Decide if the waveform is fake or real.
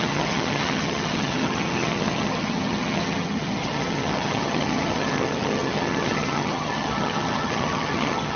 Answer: fake